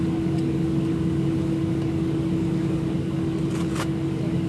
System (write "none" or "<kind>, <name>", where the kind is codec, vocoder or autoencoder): codec, DAC